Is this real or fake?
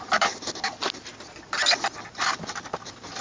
real